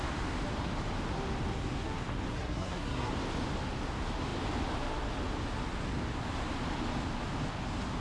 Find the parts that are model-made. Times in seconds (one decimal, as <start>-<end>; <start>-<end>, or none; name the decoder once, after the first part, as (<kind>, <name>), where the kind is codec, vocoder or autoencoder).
2.3-3.1 (codec, SNAC)